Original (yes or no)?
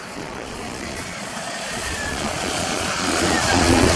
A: no